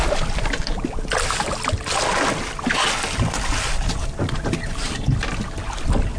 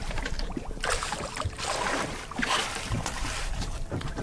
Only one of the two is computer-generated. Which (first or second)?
second